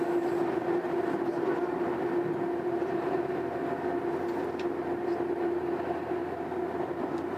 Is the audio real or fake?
real